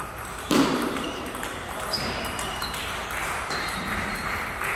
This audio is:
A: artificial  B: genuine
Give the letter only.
A